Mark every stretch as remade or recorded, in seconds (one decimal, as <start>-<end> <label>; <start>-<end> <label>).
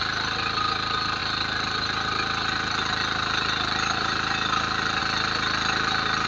0.0-6.3 recorded